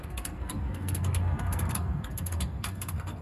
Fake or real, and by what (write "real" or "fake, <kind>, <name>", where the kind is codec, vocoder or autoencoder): fake, codec, SNAC